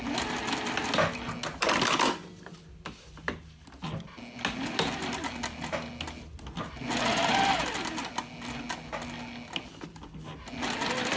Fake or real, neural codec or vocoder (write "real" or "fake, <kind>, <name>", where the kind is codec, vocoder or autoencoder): real